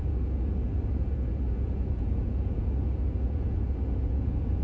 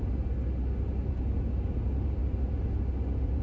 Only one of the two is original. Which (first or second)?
second